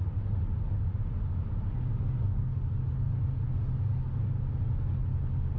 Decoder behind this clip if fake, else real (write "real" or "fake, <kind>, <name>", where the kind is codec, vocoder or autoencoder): real